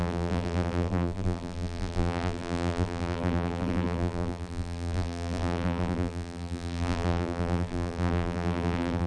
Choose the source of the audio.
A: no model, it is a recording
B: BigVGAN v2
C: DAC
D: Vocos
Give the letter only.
B